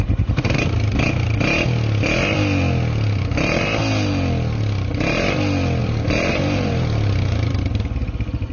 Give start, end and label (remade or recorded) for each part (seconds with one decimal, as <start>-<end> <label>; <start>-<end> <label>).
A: 0.0-5.8 recorded; 5.8-7.6 remade; 7.6-8.5 recorded